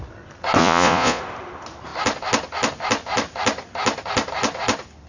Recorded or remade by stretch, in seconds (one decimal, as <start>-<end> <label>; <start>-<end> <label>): 0.0-0.6 recorded; 0.6-1.2 remade; 1.2-5.1 recorded